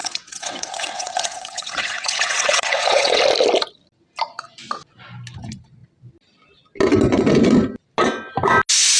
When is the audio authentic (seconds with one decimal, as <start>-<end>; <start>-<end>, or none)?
3.2-9.0